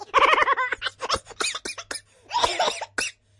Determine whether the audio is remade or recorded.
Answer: recorded